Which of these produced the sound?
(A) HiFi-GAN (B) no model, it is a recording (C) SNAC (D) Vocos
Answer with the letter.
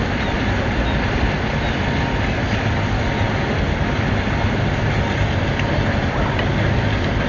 B